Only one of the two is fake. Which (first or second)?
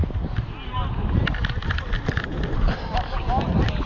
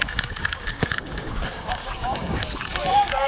second